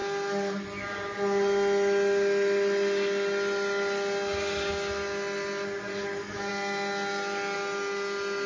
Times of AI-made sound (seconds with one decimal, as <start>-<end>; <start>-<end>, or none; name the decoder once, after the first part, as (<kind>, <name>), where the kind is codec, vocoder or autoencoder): 5.9-6.5 (autoencoder, DAC-VAE)